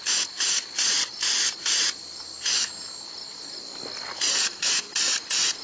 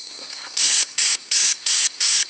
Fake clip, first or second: second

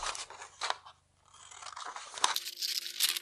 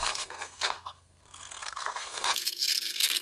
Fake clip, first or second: second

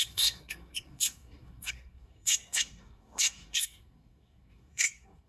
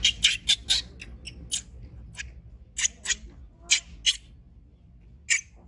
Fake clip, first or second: first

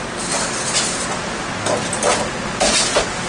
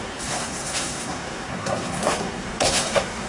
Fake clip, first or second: second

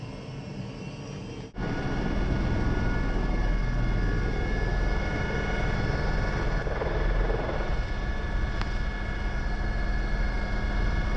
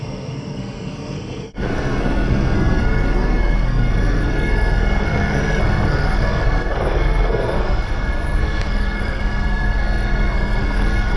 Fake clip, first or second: second